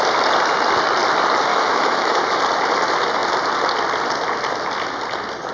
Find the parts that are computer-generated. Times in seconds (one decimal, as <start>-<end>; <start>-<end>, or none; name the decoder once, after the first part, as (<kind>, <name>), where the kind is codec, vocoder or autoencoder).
1.5-2.2 (autoencoder, DAC-VAE)